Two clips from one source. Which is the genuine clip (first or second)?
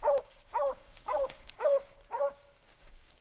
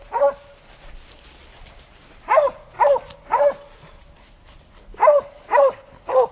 second